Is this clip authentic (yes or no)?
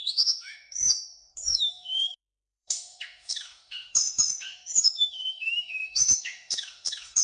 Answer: no